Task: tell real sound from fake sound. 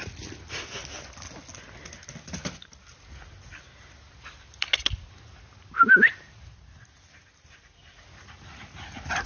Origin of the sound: real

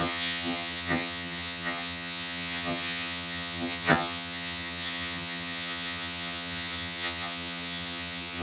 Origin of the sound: fake